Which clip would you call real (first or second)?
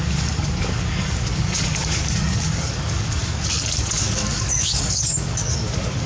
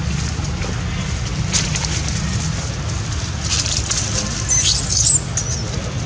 second